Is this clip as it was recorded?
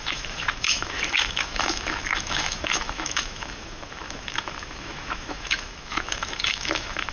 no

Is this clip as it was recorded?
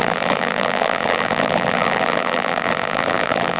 no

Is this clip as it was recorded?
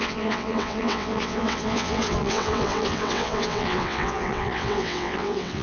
no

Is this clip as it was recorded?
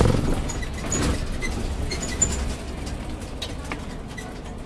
yes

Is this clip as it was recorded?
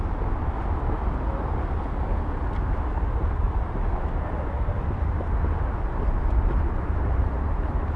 yes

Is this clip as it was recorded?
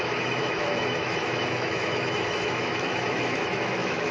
no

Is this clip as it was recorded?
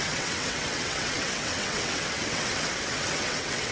no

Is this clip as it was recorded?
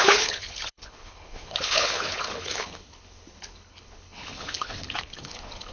no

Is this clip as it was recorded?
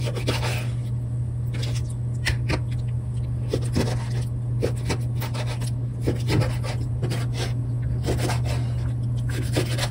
yes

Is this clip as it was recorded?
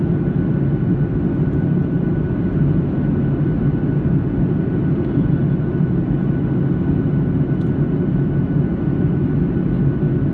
yes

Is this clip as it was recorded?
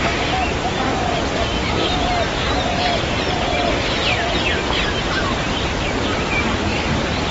yes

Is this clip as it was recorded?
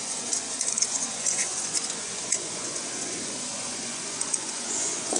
no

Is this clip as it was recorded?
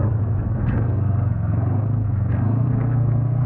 no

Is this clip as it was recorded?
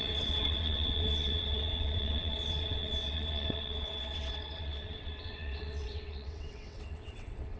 no